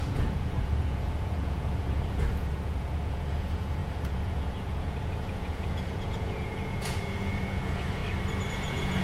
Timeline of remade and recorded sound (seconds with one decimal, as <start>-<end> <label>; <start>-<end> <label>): 0.0-8.0 remade; 8.0-8.5 recorded; 8.5-9.0 remade